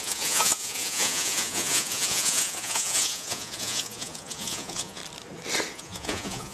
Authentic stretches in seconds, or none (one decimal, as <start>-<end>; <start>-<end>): 5.0-5.7